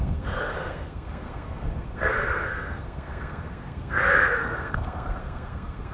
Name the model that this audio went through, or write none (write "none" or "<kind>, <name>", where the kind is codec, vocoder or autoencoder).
codec, SNAC